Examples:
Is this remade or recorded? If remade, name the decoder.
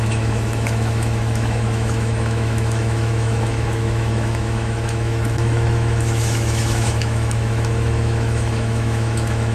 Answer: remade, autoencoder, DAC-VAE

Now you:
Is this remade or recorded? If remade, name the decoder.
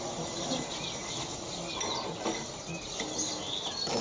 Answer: recorded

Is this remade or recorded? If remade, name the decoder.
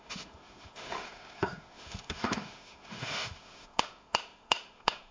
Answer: remade, autoencoder, DAC-VAE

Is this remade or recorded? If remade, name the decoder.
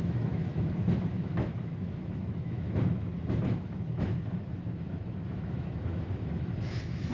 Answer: remade, autoencoder, DAC-VAE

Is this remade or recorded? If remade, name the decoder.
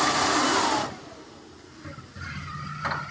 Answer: recorded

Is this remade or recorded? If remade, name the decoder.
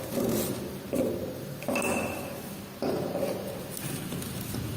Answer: recorded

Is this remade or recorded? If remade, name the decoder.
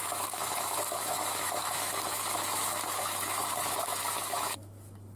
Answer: remade, autoencoder, DAC-VAE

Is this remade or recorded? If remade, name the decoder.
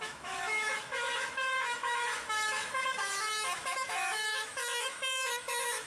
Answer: remade, autoencoder, DAC-VAE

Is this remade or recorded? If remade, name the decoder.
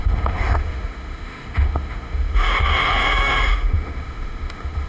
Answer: remade, autoencoder, DAC-VAE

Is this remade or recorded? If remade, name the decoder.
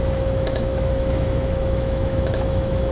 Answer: remade, autoencoder, DAC-VAE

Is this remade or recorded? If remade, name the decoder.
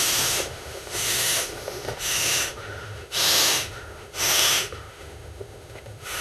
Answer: remade, autoencoder, DAC-VAE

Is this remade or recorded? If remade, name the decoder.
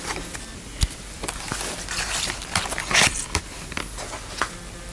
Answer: recorded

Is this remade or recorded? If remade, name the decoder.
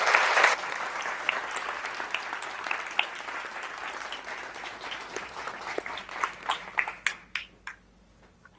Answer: recorded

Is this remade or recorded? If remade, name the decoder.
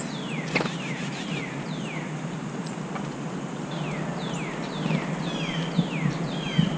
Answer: recorded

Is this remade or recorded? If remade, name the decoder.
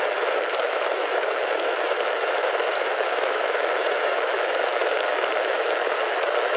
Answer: remade, autoencoder, DAC-VAE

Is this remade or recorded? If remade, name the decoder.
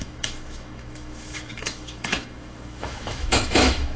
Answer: remade, autoencoder, DAC-VAE